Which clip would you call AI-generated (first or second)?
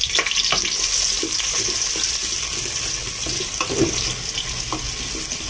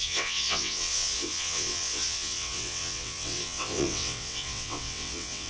second